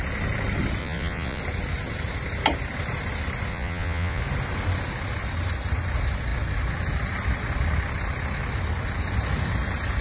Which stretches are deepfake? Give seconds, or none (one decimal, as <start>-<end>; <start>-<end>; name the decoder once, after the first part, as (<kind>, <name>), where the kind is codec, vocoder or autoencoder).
0.8-1.4 (vocoder, Vocos); 3.5-4.2